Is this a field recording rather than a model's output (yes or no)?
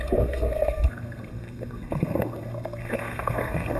no